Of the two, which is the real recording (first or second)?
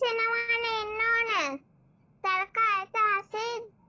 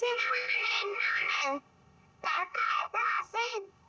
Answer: first